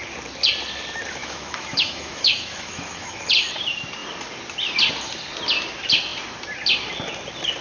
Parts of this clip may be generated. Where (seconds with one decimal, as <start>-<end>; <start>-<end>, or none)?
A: 1.2-3.3